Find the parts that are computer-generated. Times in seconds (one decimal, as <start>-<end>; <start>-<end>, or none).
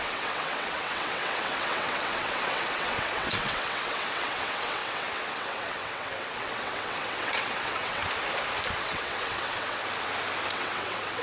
0.0-8.0; 8.8-9.8; 10.5-11.2